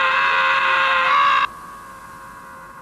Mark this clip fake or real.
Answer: real